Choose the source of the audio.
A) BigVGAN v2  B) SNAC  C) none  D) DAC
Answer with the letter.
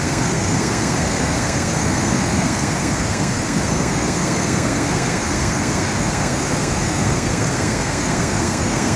B